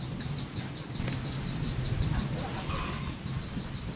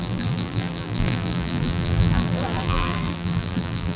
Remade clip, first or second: second